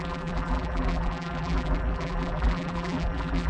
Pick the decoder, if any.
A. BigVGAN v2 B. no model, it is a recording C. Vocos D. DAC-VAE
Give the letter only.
A